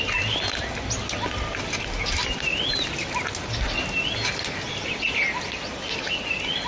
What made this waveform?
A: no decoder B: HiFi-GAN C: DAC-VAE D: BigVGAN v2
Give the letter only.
A